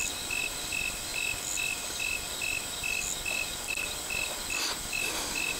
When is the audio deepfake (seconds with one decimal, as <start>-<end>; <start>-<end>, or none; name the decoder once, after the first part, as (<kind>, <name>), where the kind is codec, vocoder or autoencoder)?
none